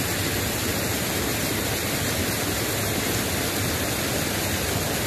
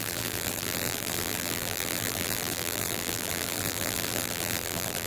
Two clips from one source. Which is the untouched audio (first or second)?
first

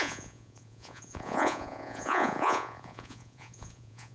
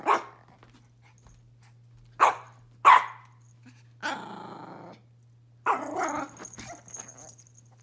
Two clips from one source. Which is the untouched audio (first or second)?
second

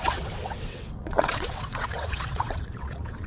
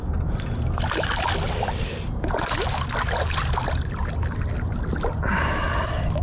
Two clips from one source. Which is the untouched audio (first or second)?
second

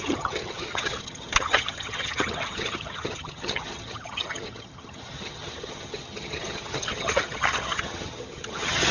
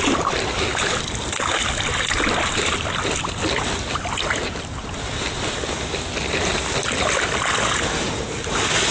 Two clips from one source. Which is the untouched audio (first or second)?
second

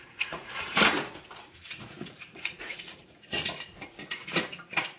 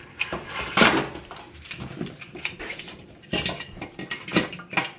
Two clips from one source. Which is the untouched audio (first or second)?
second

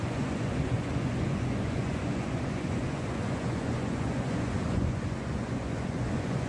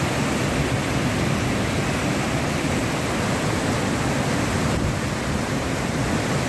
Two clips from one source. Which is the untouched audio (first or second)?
second